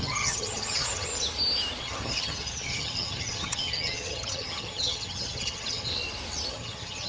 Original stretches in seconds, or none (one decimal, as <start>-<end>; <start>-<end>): 1.1-1.8; 5.9-6.5